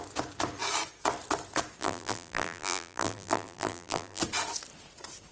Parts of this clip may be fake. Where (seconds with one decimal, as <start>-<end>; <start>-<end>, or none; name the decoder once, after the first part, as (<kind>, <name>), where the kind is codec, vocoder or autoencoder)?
1.8-4.2 (vocoder, BigVGAN v2)